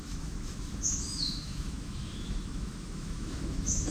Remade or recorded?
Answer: remade